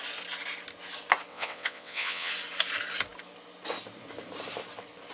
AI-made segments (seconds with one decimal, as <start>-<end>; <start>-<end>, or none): 1.3-2.3